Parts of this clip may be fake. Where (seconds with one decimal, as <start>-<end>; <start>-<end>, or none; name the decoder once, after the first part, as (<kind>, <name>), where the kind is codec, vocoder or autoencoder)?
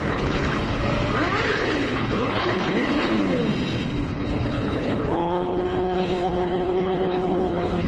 0.0-0.9 (codec, HILCodec); 1.5-3.4; 4.0-7.9